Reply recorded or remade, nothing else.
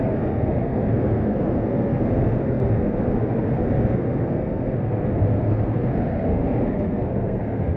remade